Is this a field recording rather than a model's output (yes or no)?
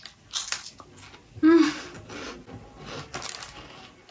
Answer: yes